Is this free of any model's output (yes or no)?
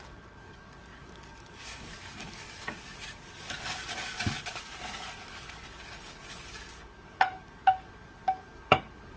no